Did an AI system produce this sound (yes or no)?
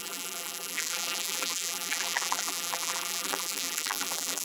yes